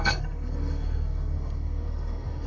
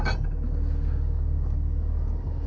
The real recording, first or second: second